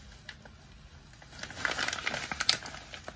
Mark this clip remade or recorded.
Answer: recorded